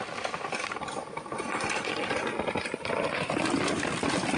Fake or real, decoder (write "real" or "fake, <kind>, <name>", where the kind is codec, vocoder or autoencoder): real